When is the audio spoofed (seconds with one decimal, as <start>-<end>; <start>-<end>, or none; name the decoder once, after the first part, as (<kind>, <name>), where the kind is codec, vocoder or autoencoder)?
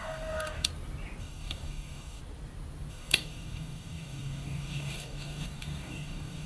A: 0.0-0.7 (codec, DAC); 1.2-2.2; 2.9-6.5